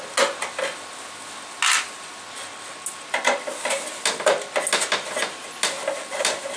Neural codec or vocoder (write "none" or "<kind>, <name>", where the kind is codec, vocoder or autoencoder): none